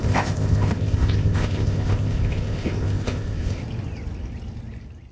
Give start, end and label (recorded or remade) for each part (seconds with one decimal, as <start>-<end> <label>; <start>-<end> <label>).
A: 0.0-3.6 remade; 3.6-5.1 recorded